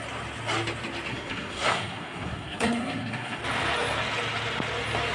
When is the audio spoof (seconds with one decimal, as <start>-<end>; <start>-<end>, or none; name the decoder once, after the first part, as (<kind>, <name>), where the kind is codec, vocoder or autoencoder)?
1.1-3.4 (codec, SNAC)